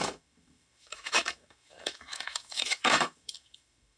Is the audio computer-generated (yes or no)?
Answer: yes